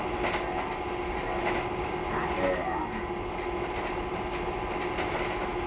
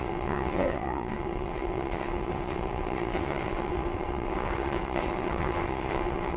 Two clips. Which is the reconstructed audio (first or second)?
second